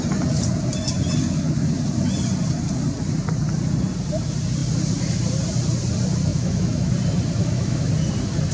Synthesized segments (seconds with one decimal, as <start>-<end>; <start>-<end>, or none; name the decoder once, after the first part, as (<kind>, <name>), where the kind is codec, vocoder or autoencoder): 6.3-6.9 (autoencoder, DAC-VAE); 7.4-7.9